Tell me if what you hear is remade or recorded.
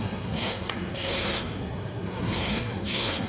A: remade